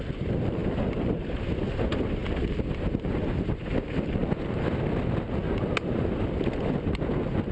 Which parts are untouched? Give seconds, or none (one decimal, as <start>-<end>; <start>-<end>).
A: 0.0-7.5